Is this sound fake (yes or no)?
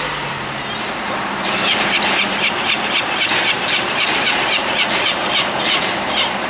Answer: yes